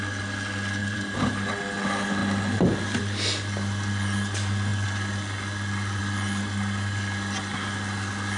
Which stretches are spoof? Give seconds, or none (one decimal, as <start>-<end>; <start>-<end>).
0.8-1.5